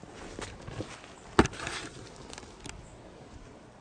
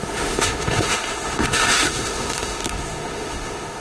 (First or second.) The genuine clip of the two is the first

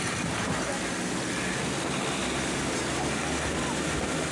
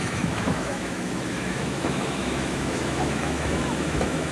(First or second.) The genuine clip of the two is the first